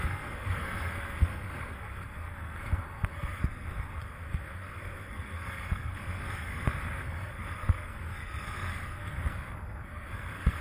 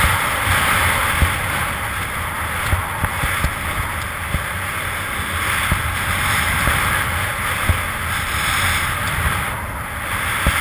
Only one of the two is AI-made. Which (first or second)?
first